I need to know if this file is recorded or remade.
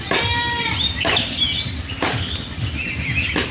recorded